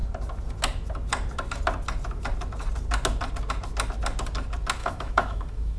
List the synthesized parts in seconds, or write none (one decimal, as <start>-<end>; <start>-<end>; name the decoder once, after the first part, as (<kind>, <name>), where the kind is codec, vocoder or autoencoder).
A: 4.8-5.8 (autoencoder, DAC-VAE)